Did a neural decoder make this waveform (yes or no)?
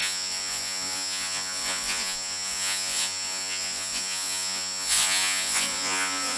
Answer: yes